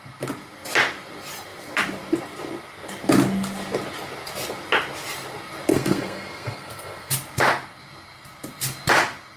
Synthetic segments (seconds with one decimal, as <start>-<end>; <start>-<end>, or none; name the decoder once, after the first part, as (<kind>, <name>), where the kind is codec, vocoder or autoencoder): 5.7-7.1 (codec, SNAC)